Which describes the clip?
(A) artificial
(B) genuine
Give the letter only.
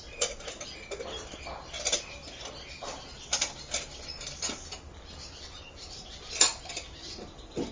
B